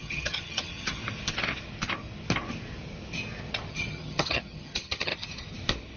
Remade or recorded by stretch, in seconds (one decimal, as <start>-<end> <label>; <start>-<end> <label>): 0.0-1.0 remade; 1.0-3.7 recorded; 3.7-5.1 remade; 5.1-6.0 recorded